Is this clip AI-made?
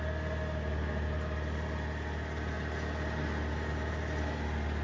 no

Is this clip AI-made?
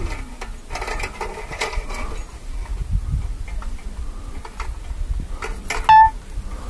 no